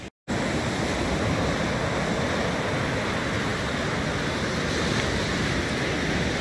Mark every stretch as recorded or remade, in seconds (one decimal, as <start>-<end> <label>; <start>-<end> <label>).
0.0-6.4 recorded

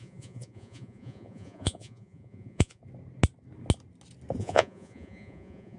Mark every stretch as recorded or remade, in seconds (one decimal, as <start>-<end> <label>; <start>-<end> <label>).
0.0-2.8 remade; 2.8-4.4 recorded; 4.4-5.8 remade